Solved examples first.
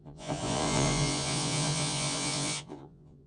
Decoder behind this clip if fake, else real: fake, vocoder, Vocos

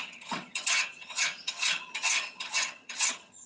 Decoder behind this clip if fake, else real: fake, vocoder, HiFi-GAN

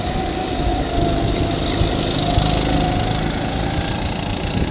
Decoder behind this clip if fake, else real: real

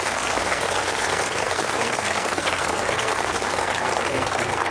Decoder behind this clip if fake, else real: fake, codec, SNAC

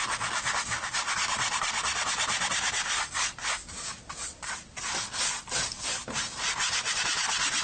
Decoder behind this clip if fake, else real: real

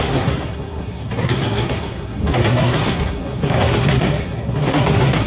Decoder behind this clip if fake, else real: fake, codec, SNAC